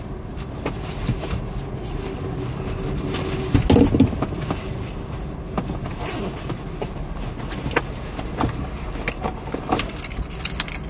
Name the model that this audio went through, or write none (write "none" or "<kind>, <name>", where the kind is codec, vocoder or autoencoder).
none